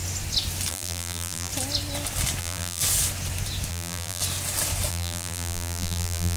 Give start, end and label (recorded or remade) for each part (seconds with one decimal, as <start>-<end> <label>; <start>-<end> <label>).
0.0-0.7 recorded; 0.7-1.5 remade; 1.5-2.4 recorded; 2.4-2.8 remade; 2.8-3.7 recorded; 3.7-4.2 remade; 4.2-4.9 recorded; 4.9-6.4 remade